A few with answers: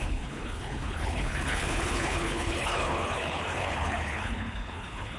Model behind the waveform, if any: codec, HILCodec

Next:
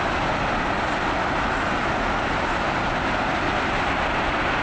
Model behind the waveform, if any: none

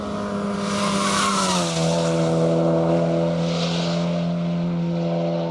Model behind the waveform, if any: none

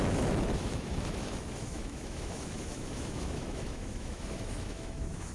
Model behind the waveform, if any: autoencoder, DAC-VAE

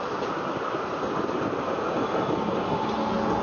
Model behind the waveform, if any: none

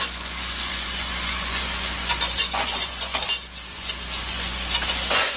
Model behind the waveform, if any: vocoder, Vocos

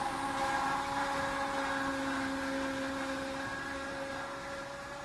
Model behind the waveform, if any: none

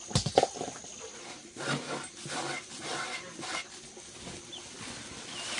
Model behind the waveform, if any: none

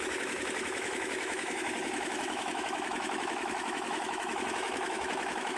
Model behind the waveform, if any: autoencoder, DAC-VAE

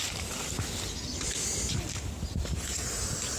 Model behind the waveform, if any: vocoder, BigVGAN v2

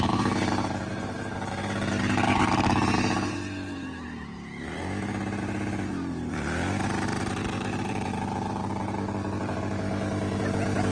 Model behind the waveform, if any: vocoder, BigVGAN v2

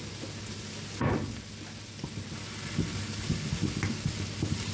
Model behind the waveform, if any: none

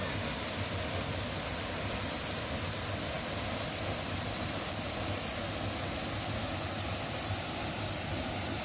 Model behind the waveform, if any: none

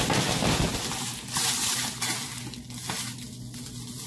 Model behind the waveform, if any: none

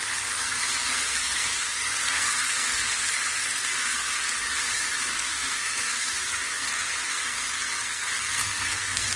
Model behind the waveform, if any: codec, SNAC